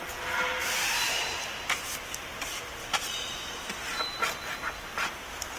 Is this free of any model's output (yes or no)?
no